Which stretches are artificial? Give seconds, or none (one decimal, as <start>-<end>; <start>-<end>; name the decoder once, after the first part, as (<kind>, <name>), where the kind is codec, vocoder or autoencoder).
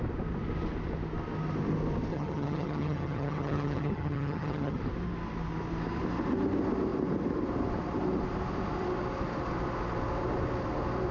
2.1-4.8 (vocoder, HiFi-GAN)